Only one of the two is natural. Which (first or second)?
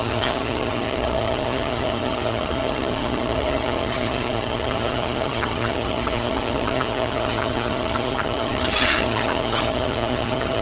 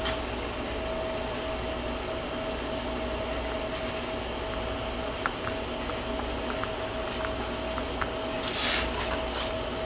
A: second